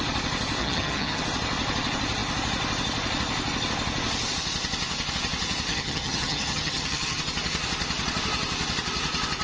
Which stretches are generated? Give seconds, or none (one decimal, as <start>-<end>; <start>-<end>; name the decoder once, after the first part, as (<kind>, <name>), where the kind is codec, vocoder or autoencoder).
0.6-1.2 (vocoder, HiFi-GAN); 5.7-7.2